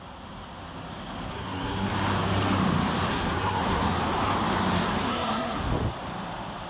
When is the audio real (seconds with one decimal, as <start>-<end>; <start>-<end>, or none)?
0.0-1.3; 1.9-3.1; 4.0-5.1; 5.6-6.7